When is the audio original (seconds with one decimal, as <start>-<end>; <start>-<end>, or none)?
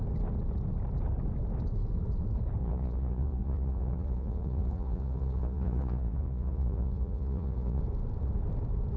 0.0-2.6; 7.8-9.0